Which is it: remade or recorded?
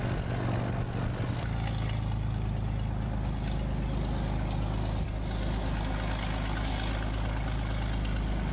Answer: recorded